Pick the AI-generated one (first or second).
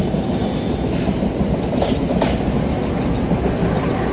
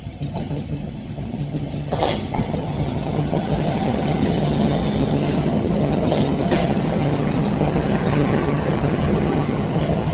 second